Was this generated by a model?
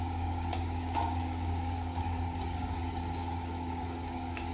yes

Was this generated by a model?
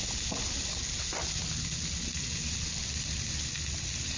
no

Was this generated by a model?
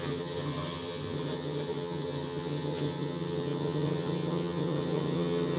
yes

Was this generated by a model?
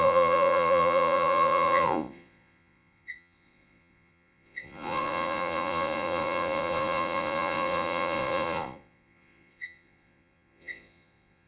yes